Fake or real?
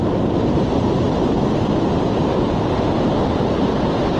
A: fake